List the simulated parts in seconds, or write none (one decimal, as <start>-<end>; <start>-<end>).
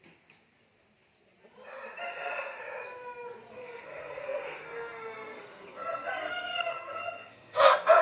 2.1-2.6; 3.6-8.0